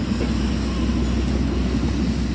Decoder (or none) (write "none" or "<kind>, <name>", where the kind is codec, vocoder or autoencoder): none